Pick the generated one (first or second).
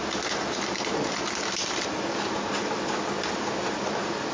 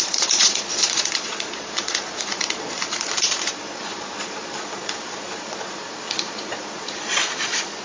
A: second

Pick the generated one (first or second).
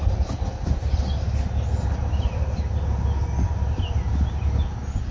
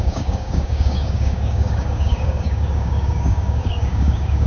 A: second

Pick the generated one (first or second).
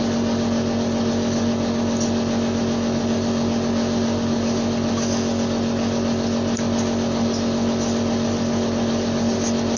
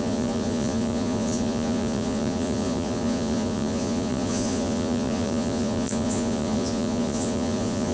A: second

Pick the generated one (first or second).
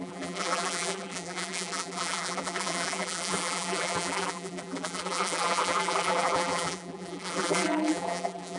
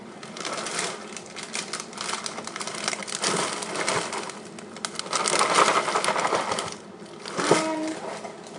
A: first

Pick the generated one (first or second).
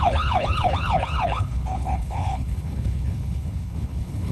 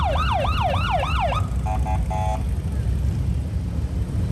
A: first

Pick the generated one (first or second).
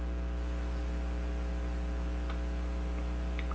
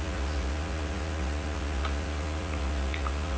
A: second